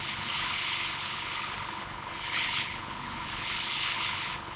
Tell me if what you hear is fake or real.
fake